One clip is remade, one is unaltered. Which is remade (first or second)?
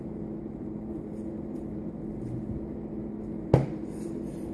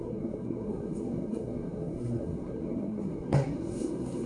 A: second